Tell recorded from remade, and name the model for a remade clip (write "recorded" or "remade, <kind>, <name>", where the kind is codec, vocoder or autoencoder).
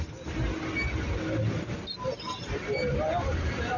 recorded